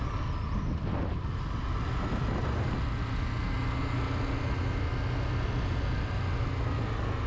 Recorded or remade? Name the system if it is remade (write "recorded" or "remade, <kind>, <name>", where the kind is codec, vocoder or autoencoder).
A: recorded